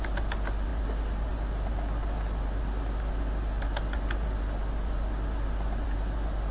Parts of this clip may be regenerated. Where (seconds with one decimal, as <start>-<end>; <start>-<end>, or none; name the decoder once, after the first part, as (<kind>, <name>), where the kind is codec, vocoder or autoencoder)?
none